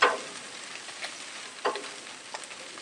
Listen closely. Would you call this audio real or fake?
real